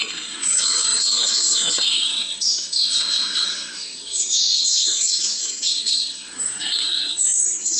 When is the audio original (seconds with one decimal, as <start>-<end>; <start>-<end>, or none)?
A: none